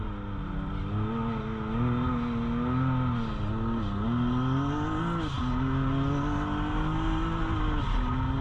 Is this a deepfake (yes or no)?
no